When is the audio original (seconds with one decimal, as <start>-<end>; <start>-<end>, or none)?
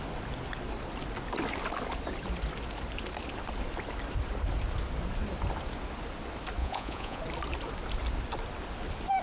0.0-6.6; 7.2-9.2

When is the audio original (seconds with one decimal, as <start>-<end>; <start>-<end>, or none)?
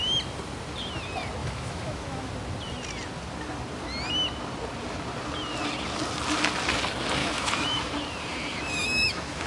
0.0-1.4; 2.3-7.2; 7.8-8.8